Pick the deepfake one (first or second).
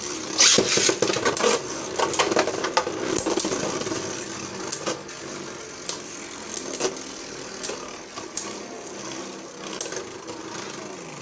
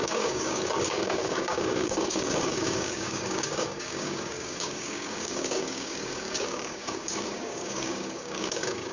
second